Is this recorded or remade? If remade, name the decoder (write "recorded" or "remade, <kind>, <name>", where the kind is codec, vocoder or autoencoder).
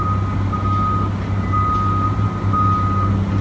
recorded